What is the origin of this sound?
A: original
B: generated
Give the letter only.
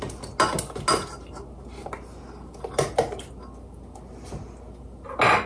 A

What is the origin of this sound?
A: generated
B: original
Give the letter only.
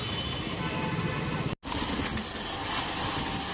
B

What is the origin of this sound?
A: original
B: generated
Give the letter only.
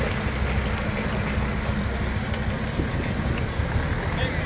A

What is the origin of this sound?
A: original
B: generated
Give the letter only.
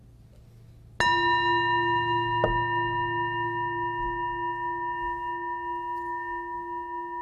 A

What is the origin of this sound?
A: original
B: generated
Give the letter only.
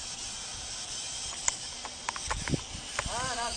A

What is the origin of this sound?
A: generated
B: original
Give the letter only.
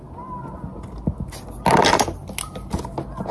B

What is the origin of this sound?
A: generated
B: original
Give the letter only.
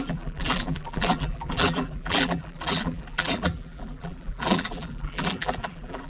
A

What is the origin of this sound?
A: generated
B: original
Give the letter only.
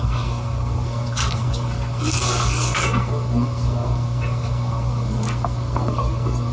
A